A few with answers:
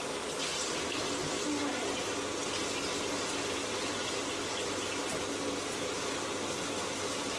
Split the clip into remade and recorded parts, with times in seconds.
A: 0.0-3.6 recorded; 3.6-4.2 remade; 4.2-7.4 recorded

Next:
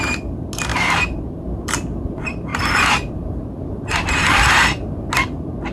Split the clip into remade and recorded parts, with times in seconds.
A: 0.0-0.7 recorded; 0.7-1.7 remade; 1.7-2.5 recorded; 2.5-5.1 remade; 5.1-5.7 recorded

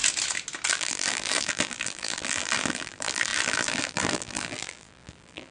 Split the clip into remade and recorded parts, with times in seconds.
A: 0.0-0.7 recorded; 0.7-5.5 remade